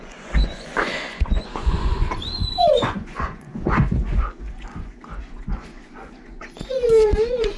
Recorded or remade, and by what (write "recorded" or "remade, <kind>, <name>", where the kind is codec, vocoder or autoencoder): remade, vocoder, Vocos